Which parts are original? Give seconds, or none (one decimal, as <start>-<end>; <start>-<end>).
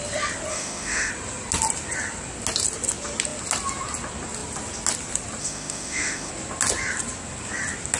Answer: 0.0-0.5; 1.1-5.4; 6.3-8.0